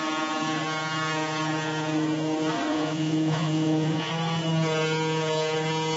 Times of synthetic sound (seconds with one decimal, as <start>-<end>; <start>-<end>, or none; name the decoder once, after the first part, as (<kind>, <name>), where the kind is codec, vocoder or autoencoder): 2.7-4.1 (vocoder, Vocos)